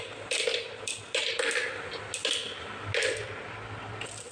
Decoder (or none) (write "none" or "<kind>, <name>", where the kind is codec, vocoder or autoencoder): none